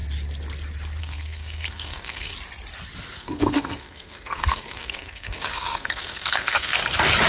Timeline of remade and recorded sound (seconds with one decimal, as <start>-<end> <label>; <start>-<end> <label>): 0.0-1.0 recorded; 1.0-2.3 remade; 2.3-3.1 recorded; 3.1-6.8 remade; 6.8-7.3 recorded